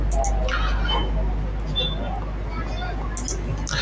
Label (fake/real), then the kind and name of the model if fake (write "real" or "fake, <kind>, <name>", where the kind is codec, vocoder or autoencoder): real